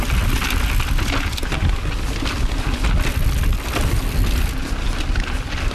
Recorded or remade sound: recorded